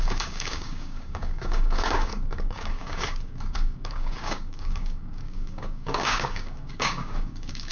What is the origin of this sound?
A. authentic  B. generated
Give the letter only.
B